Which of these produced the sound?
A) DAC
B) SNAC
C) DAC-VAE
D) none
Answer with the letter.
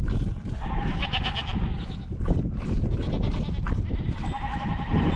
D